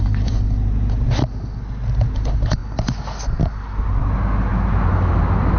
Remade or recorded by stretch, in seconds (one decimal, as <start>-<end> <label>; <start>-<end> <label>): 0.0-5.6 recorded